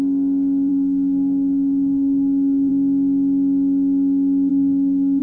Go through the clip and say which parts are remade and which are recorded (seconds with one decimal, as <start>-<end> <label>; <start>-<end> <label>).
0.0-0.7 recorded; 0.7-2.7 remade; 2.7-4.5 recorded; 4.5-5.2 remade